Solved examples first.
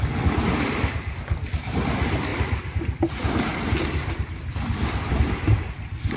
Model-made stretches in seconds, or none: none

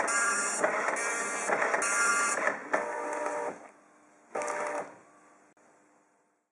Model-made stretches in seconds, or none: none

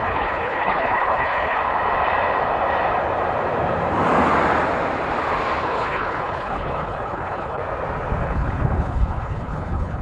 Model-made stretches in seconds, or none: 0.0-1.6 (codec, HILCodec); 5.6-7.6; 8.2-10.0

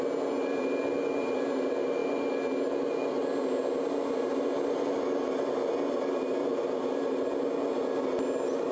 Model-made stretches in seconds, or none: none

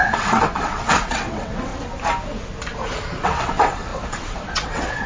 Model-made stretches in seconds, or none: 0.0-1.7 (vocoder, WaveNeXt); 3.2-5.1

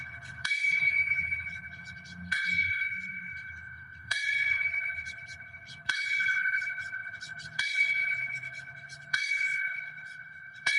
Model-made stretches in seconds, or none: 0.0-10.8 (codec, HILCodec)

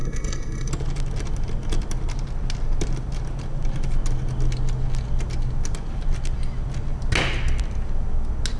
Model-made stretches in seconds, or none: 0.0-0.7 (codec, SNAC)